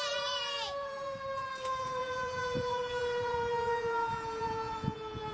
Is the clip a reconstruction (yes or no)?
yes